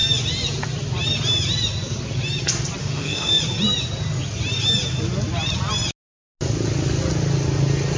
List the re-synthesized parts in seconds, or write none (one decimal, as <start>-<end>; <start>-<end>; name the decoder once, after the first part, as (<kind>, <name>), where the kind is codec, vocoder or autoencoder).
2.8-3.4 (autoencoder, DAC-VAE)